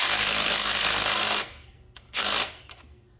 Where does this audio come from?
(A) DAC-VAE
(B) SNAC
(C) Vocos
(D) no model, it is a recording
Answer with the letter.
B